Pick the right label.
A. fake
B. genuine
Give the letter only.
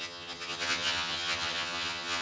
A